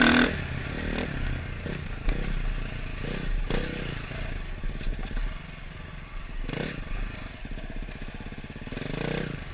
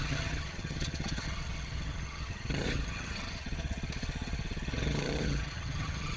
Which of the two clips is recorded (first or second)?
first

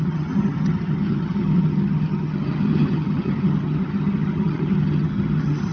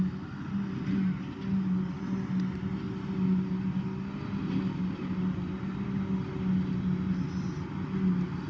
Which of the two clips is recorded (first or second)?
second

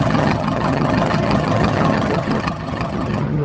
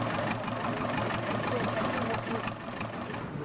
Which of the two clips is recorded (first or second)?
second